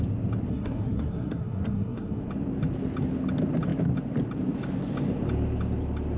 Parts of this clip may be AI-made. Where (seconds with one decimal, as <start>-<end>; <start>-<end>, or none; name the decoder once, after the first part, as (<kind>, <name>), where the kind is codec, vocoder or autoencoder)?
0.5-2.2 (codec, SNAC)